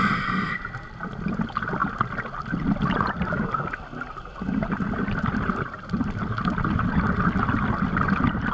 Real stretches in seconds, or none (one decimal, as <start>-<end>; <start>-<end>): 0.0-8.5